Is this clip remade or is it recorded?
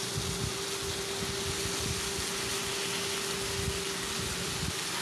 recorded